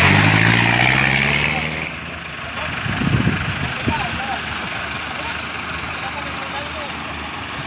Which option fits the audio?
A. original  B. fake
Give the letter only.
A